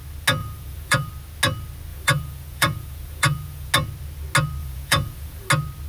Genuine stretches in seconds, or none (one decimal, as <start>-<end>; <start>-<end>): 0.0-0.4; 1.1-1.9; 3.7-4.6; 5.5-5.9